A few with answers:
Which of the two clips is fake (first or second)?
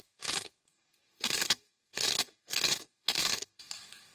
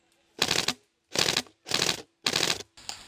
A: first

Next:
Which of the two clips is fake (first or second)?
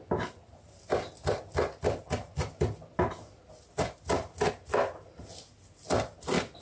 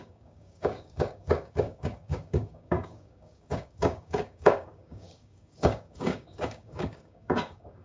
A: second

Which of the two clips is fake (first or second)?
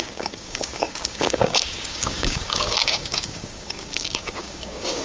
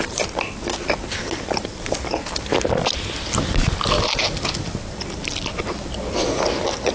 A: first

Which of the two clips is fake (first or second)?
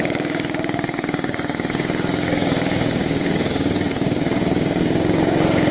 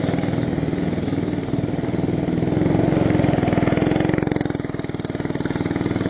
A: first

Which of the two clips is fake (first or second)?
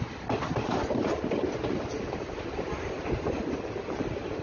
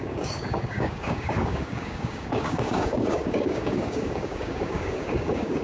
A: second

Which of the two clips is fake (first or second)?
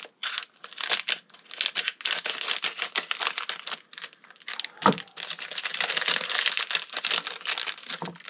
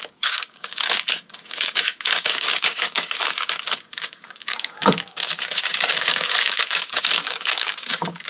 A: second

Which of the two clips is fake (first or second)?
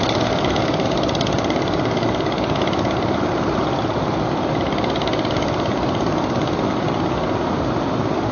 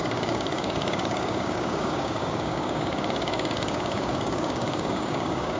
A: second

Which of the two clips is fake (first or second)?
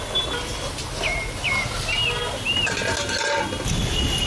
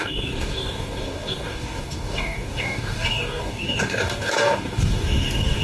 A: second